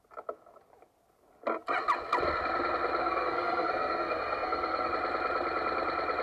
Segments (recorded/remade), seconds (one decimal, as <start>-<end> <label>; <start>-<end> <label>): 0.0-3.0 recorded; 3.0-4.9 remade; 4.9-6.2 recorded